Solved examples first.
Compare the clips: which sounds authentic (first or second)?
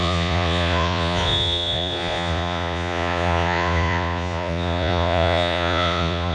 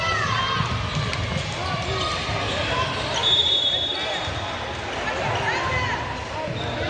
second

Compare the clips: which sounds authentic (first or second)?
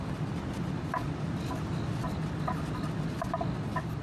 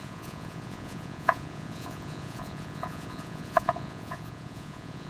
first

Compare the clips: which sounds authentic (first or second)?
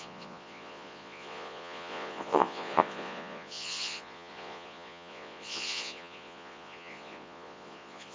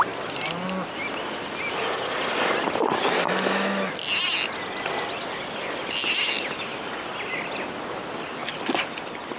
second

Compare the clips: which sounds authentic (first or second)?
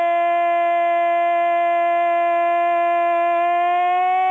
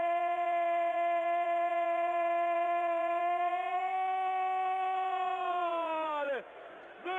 first